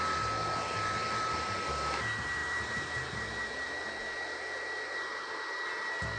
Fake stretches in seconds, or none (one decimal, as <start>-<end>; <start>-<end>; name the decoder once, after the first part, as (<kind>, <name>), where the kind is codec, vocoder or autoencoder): 2.4-6.2 (vocoder, BigVGAN v2)